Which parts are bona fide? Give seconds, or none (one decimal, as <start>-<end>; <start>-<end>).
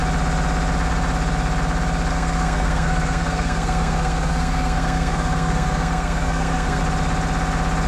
0.0-2.1; 6.8-7.9